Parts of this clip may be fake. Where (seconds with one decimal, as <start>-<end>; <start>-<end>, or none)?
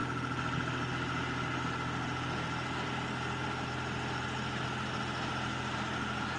none